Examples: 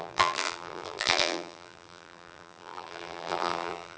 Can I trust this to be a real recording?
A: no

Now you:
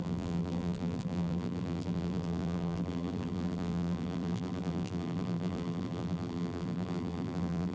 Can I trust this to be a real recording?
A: no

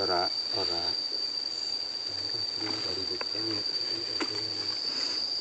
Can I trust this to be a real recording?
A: yes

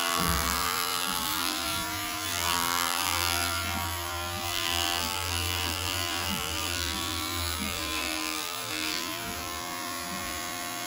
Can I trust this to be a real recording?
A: no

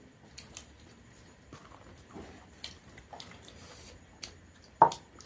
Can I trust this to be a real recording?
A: yes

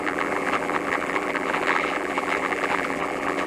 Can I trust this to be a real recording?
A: no